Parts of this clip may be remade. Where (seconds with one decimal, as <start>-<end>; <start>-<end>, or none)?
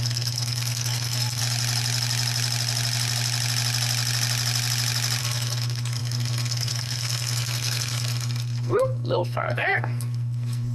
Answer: 0.0-1.4; 5.2-10.7